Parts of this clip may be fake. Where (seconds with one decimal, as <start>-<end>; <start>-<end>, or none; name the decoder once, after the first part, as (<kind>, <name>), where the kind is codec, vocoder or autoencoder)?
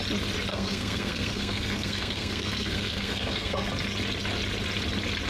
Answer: 0.5-3.7 (codec, SNAC)